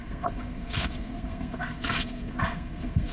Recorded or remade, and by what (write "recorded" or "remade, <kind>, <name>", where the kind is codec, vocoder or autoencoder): remade, codec, SNAC